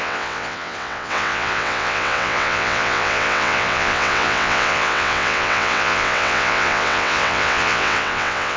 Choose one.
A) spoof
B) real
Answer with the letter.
A